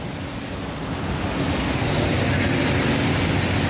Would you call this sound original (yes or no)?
yes